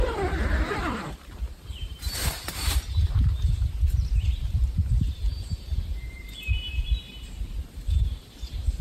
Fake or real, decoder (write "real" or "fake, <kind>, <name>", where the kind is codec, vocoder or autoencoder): fake, vocoder, BigVGAN v2